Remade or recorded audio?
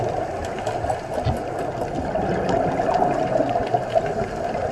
recorded